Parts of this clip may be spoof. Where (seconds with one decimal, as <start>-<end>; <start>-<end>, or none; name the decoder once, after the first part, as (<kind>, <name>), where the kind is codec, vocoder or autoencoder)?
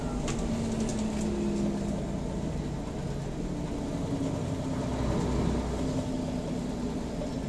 none